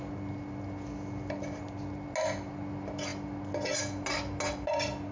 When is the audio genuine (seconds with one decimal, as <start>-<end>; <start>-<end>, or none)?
0.0-5.1